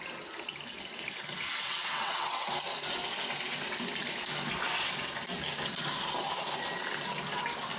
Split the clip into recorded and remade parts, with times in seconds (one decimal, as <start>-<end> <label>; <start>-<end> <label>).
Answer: 0.0-1.6 recorded; 1.6-2.5 remade; 2.5-7.8 recorded